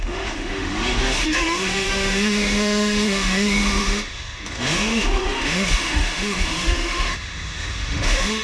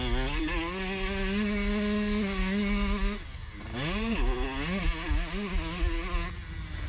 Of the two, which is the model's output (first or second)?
first